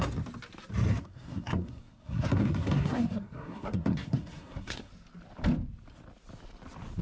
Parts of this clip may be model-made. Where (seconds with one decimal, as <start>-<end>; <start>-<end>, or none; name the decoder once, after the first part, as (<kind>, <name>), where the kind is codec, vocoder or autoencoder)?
1.0-4.9 (codec, SNAC)

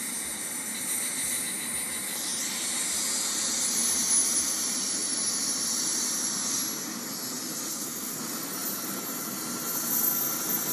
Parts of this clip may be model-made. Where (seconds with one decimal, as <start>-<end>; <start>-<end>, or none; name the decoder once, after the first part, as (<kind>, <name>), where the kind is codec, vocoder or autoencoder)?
7.7-8.2 (codec, SNAC)

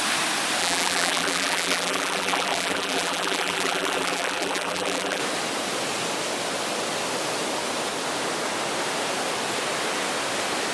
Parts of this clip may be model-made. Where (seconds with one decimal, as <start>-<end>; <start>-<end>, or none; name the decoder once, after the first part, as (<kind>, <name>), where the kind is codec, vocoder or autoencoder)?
0.6-5.2 (vocoder, BigVGAN v2)

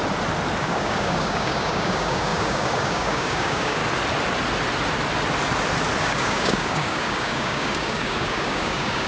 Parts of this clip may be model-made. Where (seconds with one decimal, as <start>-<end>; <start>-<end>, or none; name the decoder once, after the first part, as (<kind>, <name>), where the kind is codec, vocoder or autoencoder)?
0.6-3.8 (codec, DAC); 6.0-9.1

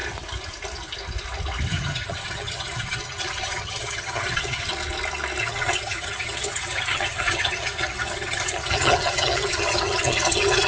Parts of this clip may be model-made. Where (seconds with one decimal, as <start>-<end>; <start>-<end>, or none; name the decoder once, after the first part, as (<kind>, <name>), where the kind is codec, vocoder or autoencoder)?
1.7-4.7 (vocoder, HiFi-GAN); 5.4-10.7

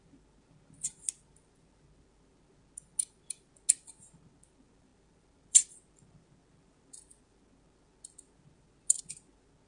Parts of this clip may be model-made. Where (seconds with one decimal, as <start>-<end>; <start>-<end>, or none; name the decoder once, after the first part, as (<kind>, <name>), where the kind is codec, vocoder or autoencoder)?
none

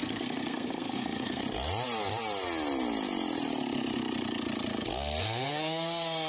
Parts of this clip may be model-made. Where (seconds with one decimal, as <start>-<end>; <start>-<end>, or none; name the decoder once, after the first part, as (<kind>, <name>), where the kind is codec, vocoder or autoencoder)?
0.0-1.4 (codec, SNAC); 5.2-6.3